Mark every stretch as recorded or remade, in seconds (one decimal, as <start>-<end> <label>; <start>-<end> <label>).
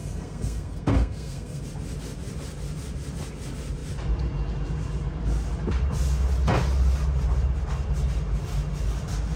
0.0-1.6 remade; 1.6-9.4 recorded